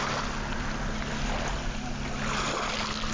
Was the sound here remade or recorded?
recorded